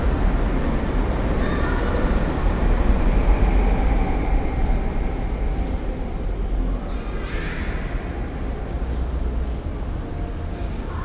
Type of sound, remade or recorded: recorded